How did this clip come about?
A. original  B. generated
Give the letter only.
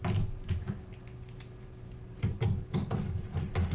A